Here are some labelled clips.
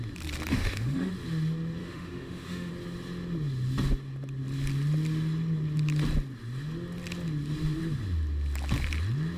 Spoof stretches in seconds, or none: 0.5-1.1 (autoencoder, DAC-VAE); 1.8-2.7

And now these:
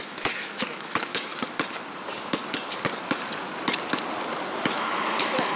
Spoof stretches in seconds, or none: 0.0-1.3 (autoencoder, DAC-VAE); 4.7-5.6

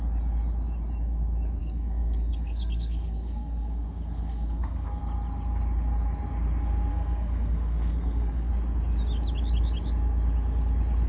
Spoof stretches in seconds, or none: 1.6-5.0 (codec, SNAC); 6.9-8.5

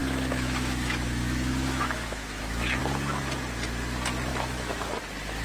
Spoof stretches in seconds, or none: 0.0-2.8 (autoencoder, DAC-VAE); 4.3-5.0